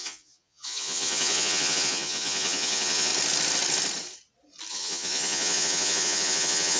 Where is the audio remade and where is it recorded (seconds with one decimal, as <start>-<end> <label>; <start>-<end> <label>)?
0.0-3.1 remade; 3.1-4.7 recorded; 4.7-6.8 remade